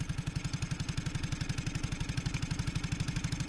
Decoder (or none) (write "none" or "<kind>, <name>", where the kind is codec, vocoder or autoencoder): none